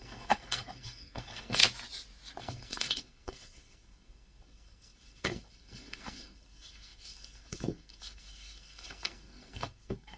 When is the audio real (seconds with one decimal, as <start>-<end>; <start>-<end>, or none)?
1.6-2.4